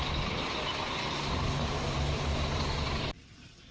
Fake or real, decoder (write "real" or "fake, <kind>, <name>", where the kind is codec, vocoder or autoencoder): real